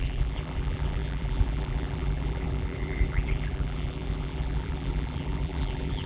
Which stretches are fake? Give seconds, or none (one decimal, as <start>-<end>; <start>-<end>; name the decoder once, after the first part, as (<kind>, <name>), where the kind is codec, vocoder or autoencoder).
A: 0.0-6.1 (vocoder, BigVGAN v2)